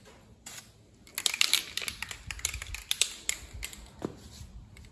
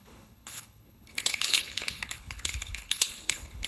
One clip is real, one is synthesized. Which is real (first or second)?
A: first